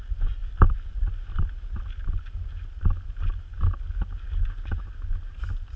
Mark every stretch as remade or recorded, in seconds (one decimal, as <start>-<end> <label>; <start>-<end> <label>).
0.0-5.8 recorded